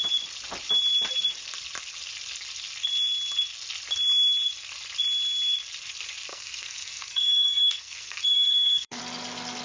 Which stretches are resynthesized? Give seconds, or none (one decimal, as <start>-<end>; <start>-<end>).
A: 6.3-9.0